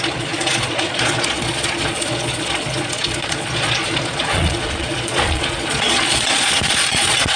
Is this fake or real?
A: fake